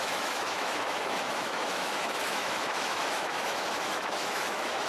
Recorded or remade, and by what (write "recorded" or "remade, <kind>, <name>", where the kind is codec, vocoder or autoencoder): remade, autoencoder, DAC-VAE